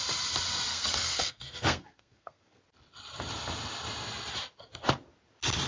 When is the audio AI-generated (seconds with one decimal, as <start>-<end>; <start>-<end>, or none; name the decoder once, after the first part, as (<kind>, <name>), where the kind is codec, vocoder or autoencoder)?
0.7-2.6 (codec, SNAC)